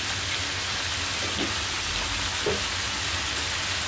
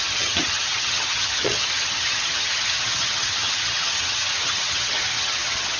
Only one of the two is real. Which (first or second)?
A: first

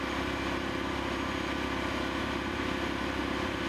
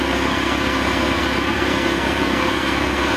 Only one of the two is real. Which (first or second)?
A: first